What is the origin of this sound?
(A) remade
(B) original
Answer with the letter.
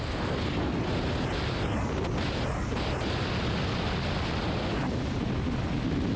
B